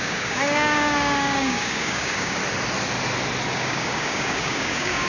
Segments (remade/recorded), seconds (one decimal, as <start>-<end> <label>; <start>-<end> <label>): 0.0-2.4 remade; 2.4-3.5 recorded; 3.5-5.1 remade